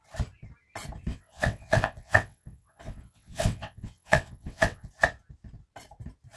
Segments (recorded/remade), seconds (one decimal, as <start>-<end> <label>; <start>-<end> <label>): 0.0-1.1 recorded; 1.1-4.9 remade; 4.9-6.4 recorded